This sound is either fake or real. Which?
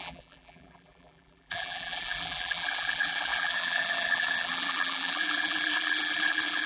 fake